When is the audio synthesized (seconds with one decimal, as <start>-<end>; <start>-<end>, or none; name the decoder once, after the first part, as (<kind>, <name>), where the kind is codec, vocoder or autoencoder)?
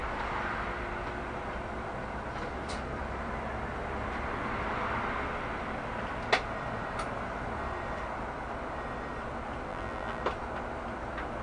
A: 9.7-10.2 (vocoder, BigVGAN v2)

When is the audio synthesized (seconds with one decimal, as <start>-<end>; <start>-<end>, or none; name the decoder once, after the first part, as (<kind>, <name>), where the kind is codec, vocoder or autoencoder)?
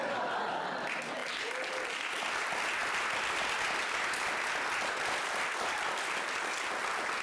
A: none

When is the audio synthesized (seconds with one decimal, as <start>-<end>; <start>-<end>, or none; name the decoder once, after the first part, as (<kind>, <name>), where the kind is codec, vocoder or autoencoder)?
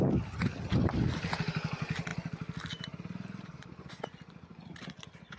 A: none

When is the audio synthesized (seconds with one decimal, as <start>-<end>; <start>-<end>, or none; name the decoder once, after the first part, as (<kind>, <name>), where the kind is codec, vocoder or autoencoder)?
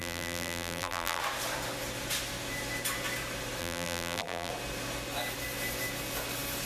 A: 0.0-1.2 (vocoder, BigVGAN v2); 3.6-4.5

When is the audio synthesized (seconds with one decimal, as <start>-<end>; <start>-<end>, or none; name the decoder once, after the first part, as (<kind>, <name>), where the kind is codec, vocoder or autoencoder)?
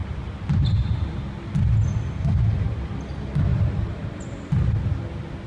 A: 3.5-4.6 (vocoder, BigVGAN v2)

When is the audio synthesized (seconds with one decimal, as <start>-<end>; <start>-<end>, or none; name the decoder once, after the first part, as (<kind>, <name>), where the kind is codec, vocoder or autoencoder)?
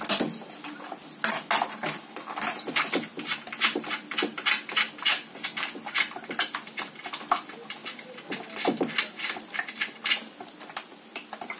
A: 7.8-8.4 (vocoder, BigVGAN v2)